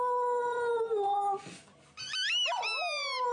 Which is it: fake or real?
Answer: real